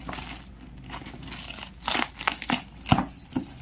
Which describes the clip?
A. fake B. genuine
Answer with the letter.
B